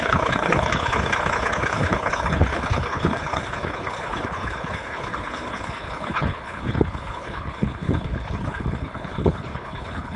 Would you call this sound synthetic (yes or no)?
yes